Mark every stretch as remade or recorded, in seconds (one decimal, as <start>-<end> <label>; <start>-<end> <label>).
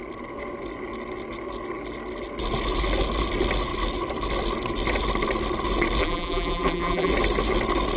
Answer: 0.0-6.0 recorded; 6.0-7.1 remade; 7.1-8.0 recorded